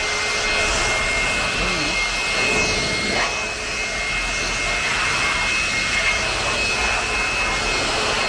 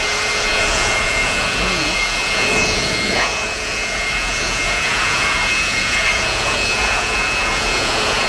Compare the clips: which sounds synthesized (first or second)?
second